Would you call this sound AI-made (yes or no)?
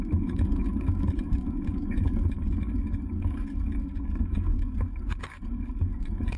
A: yes